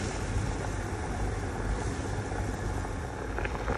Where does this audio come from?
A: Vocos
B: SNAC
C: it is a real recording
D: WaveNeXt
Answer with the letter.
C